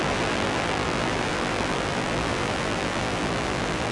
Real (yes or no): no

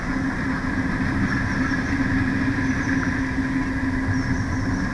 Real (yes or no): yes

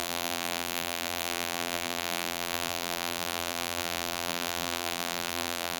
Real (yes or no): no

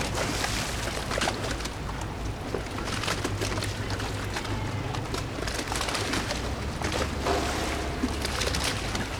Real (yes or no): yes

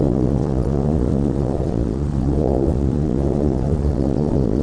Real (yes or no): no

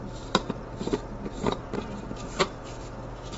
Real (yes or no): yes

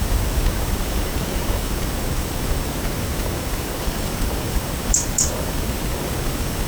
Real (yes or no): no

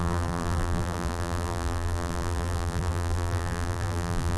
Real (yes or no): no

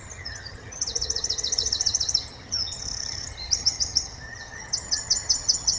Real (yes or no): no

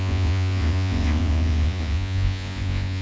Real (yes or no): no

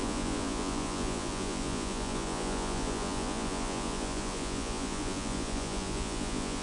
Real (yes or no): no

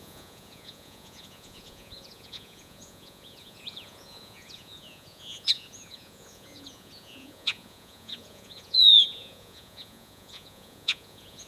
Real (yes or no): no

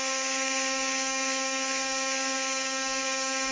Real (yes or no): no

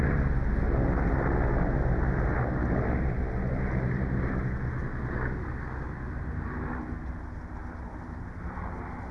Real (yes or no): yes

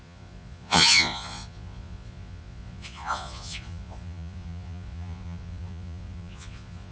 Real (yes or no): no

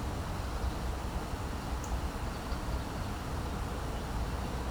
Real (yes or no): yes